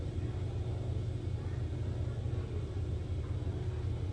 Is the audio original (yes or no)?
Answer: yes